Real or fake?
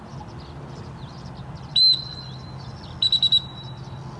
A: real